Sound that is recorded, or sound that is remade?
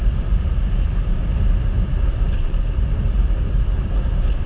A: recorded